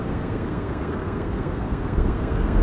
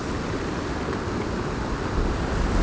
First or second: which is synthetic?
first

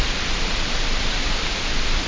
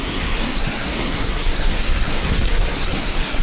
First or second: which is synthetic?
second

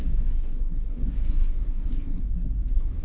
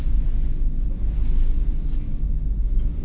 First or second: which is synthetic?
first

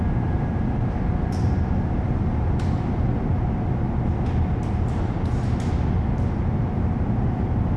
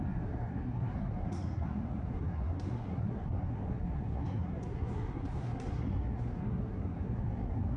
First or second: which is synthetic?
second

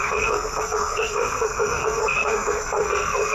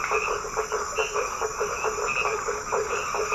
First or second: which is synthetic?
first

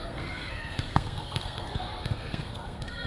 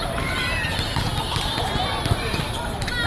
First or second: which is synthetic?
first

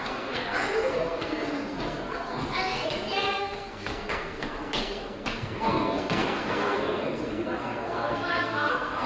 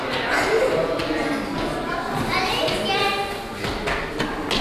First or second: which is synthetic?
first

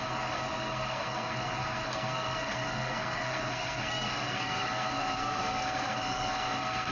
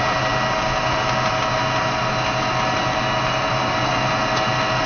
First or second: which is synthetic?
first